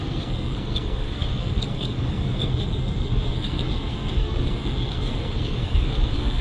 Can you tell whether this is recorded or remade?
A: remade